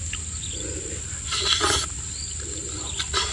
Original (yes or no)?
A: yes